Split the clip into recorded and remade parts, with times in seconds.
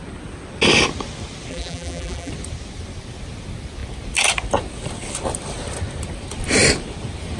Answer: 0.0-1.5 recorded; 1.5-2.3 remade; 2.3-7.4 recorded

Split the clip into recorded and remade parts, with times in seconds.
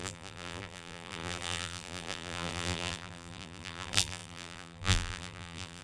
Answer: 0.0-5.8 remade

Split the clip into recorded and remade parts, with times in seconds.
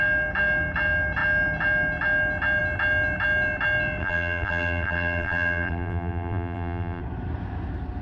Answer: 0.0-4.0 recorded; 4.0-7.0 remade; 7.0-8.0 recorded